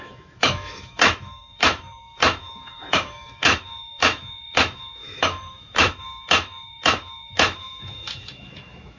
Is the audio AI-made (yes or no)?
yes